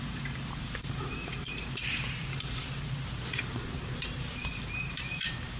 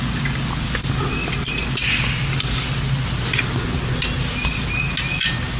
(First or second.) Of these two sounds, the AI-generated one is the first